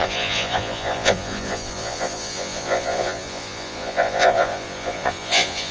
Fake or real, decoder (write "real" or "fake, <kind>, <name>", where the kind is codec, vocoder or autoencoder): fake, vocoder, Vocos